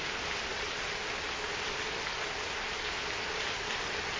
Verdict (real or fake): real